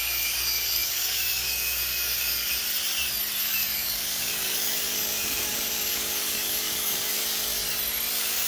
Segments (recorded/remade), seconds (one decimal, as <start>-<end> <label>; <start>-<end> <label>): 0.0-2.6 remade; 2.6-3.4 recorded; 3.4-7.6 remade; 7.6-8.1 recorded; 8.1-8.5 remade